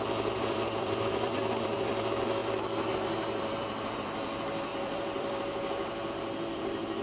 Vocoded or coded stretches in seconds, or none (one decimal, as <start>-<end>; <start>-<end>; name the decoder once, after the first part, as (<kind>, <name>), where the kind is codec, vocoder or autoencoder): 0.0-7.0 (vocoder, BigVGAN v2)